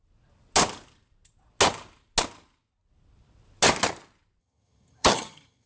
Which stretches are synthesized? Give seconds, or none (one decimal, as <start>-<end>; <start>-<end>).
4.4-5.7